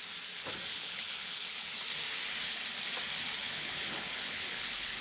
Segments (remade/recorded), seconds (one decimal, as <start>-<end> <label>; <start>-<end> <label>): 0.0-0.7 recorded; 0.7-1.7 remade; 1.7-3.4 recorded; 3.4-5.0 remade